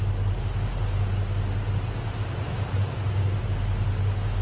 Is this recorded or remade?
recorded